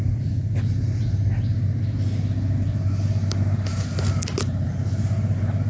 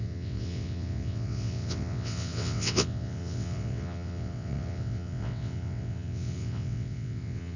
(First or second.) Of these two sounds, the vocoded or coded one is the second